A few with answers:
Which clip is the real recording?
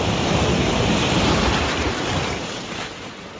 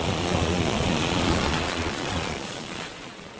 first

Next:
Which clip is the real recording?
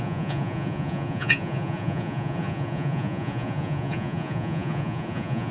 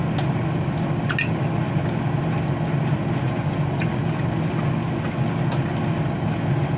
second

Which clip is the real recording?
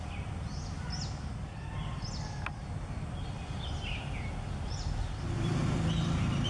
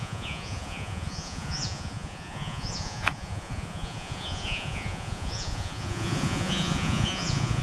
first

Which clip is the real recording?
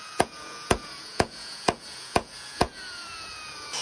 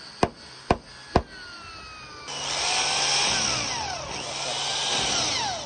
second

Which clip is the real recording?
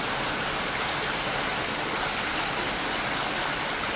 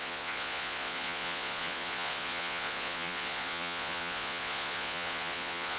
first